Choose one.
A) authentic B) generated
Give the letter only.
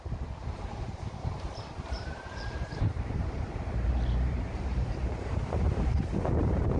B